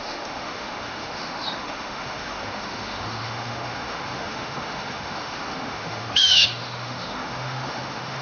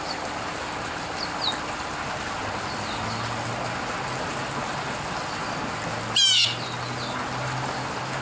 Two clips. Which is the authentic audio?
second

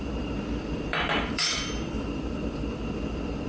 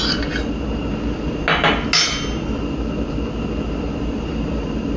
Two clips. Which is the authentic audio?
second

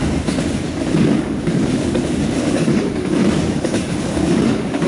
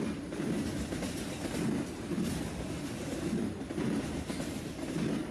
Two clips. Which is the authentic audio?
second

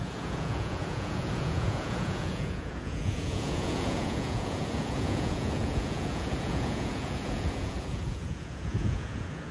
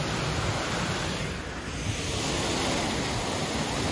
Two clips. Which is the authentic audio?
second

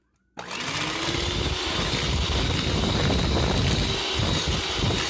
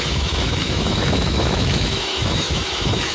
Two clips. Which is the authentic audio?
first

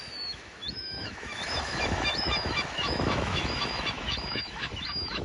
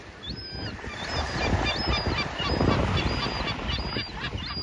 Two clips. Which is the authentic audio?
second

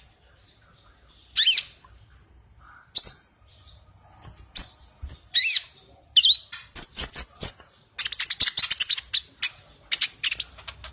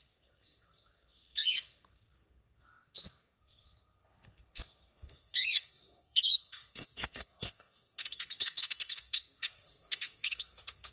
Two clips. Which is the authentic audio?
first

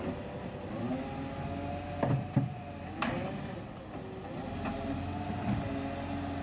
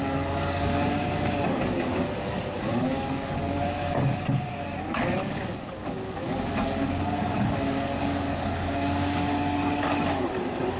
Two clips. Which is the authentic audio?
first